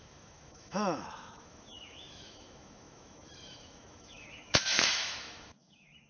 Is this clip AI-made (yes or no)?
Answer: yes